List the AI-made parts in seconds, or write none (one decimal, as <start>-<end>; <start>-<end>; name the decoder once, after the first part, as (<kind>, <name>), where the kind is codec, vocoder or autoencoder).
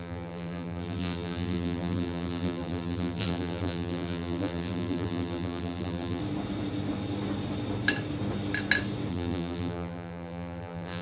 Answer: 0.0-6.2 (vocoder, BigVGAN v2); 9.1-11.0